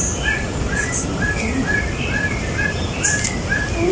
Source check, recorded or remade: recorded